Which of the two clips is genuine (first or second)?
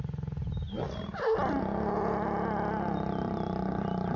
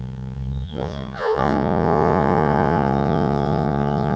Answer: first